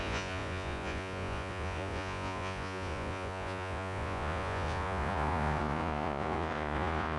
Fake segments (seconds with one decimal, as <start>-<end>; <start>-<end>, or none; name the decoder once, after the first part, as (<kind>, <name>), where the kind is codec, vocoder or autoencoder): 0.0-7.2 (vocoder, Vocos)